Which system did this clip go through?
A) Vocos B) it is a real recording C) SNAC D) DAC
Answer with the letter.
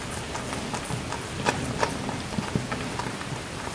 B